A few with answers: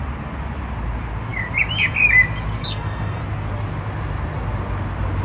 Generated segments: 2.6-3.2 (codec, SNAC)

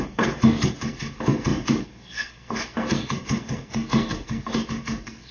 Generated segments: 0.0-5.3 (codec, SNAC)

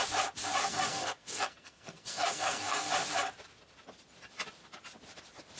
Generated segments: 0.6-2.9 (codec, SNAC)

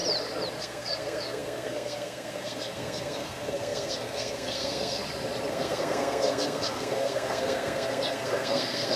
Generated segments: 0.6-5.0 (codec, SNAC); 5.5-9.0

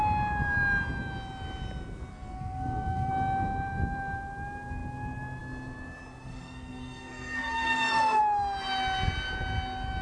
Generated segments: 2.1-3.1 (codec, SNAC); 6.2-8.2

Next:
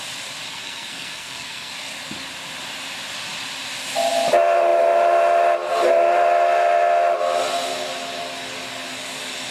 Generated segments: 0.5-1.7 (codec, SNAC)

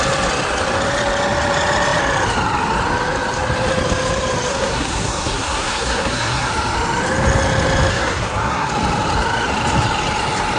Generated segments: 4.5-6.5 (codec, SNAC); 7.9-8.7